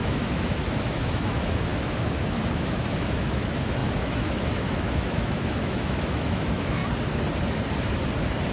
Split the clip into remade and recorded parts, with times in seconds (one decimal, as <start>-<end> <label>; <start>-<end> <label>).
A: 0.0-6.8 remade; 6.8-8.5 recorded

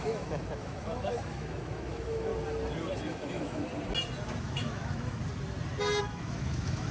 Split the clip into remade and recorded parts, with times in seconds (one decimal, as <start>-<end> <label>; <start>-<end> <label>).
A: 0.0-2.3 remade; 2.3-2.9 recorded; 2.9-3.7 remade; 3.7-4.4 recorded; 4.4-5.2 remade; 5.2-6.0 recorded; 6.0-6.9 remade

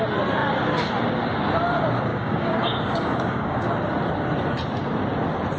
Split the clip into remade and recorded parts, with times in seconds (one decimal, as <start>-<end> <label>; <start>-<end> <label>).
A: 0.0-2.1 recorded; 2.1-3.7 remade; 3.7-5.6 recorded

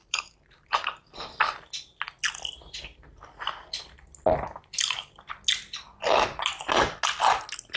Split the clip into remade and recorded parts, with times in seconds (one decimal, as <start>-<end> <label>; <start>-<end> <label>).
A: 0.0-0.8 remade; 0.8-7.8 recorded

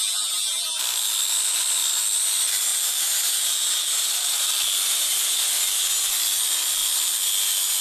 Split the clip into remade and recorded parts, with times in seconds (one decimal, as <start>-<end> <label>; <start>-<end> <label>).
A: 0.0-2.7 recorded; 2.7-4.5 remade; 4.5-4.9 recorded; 4.9-5.6 remade; 5.6-7.8 recorded

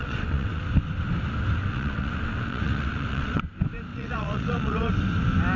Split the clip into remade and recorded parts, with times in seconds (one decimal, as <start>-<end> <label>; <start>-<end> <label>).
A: 0.0-0.6 remade; 0.6-1.6 recorded; 1.6-3.4 remade; 3.4-3.9 recorded; 3.9-4.9 remade; 4.9-5.6 recorded

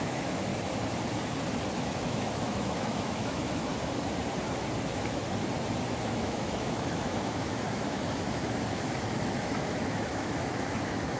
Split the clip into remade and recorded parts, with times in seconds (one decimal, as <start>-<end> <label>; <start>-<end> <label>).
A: 0.0-0.5 remade; 0.5-1.8 recorded; 1.8-3.7 remade; 3.7-5.9 recorded; 5.9-11.2 remade

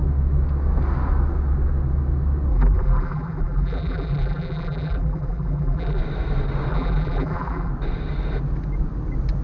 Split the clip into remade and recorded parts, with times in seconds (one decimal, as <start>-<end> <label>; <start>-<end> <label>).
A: 0.0-2.5 recorded; 2.5-6.0 remade; 6.0-6.7 recorded; 6.7-7.7 remade; 7.7-9.4 recorded